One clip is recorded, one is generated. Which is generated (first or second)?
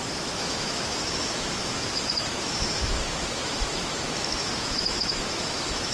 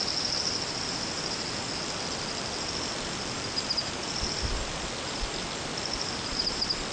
first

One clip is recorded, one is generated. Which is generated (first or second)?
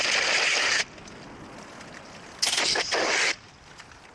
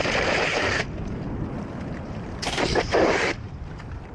second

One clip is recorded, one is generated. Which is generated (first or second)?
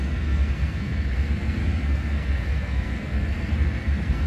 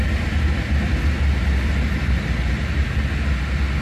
first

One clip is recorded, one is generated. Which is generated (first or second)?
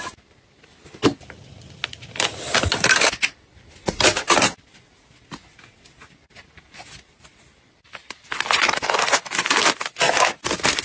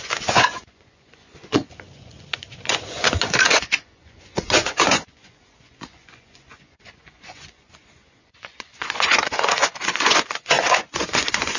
second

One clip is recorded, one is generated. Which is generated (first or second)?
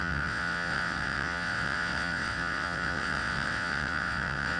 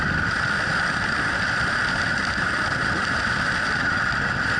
first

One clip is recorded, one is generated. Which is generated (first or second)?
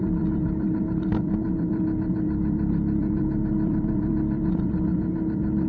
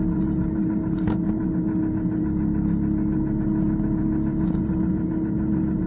first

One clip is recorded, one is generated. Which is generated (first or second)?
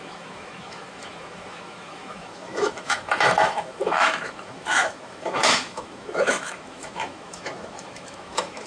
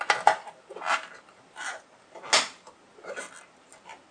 first